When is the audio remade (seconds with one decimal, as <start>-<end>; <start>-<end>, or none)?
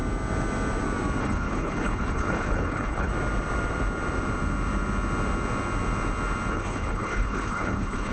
1.2-3.1; 6.5-8.1